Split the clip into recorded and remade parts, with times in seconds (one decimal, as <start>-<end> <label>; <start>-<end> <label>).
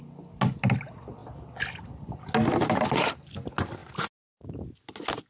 0.0-5.3 recorded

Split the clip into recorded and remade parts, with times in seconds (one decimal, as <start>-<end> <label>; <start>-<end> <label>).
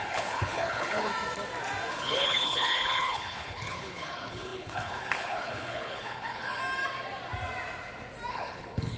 0.0-1.1 remade; 1.1-1.9 recorded; 1.9-6.6 remade; 6.6-8.3 recorded; 8.3-9.0 remade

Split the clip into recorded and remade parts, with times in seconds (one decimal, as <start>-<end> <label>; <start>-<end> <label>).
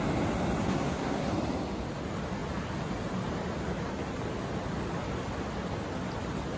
0.0-0.6 recorded; 0.6-1.3 remade; 1.3-6.6 recorded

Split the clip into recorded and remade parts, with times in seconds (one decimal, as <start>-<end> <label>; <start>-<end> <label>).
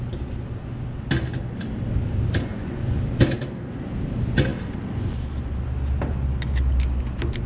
0.0-2.5 recorded; 2.5-3.0 remade; 3.0-7.5 recorded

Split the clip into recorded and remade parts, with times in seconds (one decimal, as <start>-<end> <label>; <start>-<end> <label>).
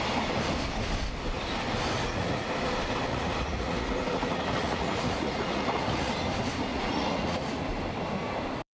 0.0-2.0 recorded; 2.0-2.5 remade; 2.5-3.1 recorded; 3.1-6.1 remade; 6.1-6.7 recorded; 6.7-7.5 remade; 7.5-8.7 recorded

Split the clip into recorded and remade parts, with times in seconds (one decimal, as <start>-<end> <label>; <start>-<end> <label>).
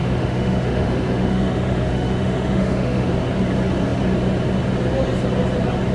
0.0-3.1 remade; 3.1-5.9 recorded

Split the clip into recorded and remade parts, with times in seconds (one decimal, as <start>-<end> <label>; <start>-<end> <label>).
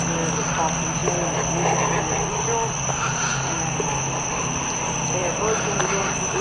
0.0-5.2 recorded; 5.2-5.8 remade; 5.8-6.4 recorded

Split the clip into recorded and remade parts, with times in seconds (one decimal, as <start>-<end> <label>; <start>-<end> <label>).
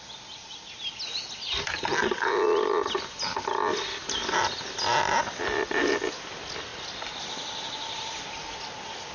0.0-9.1 recorded